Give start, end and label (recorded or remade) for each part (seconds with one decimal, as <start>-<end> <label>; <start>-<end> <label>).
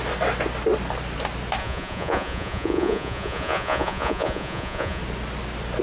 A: 0.0-1.6 recorded; 1.6-5.0 remade; 5.0-5.8 recorded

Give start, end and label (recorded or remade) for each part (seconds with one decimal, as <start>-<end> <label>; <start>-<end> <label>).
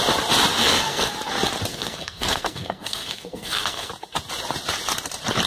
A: 0.0-0.6 recorded; 0.6-1.1 remade; 1.1-1.7 recorded; 1.7-3.9 remade; 3.9-5.5 recorded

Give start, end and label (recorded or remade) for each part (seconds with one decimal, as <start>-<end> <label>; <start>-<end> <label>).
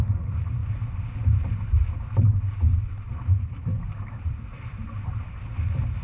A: 0.0-6.0 recorded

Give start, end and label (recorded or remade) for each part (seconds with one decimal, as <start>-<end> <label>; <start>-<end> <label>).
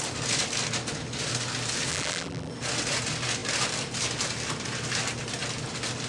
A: 0.0-1.9 recorded; 1.9-2.5 remade; 2.5-6.1 recorded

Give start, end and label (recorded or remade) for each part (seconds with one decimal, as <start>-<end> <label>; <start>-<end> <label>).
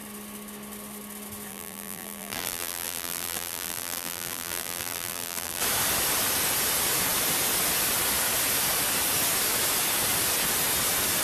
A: 0.0-1.5 recorded; 1.5-5.6 remade; 5.6-11.2 recorded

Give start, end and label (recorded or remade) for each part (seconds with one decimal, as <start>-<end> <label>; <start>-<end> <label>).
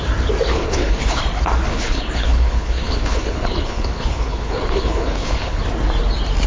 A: 0.0-0.5 recorded; 0.5-1.2 remade; 1.2-1.7 recorded; 1.7-5.6 remade; 5.6-6.5 recorded